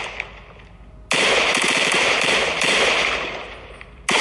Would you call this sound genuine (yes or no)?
yes